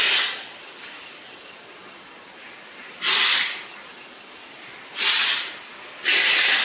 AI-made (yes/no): no